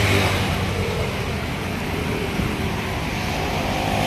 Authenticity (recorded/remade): recorded